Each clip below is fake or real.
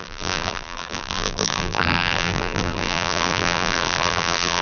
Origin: fake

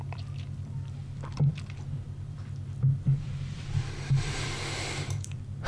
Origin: fake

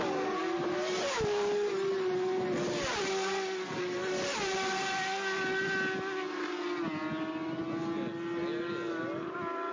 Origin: real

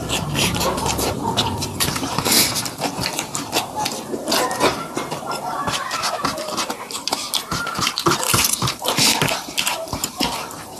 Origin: fake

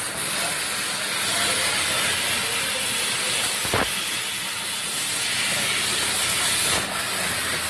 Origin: real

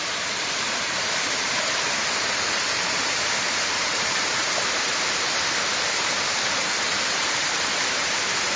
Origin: fake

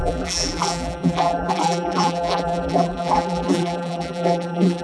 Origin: fake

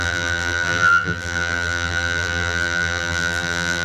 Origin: fake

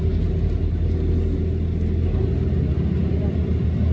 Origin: real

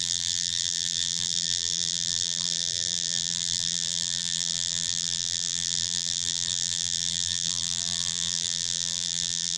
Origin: fake